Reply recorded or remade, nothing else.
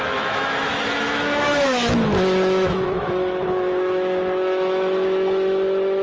remade